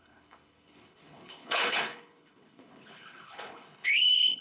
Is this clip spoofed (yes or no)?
yes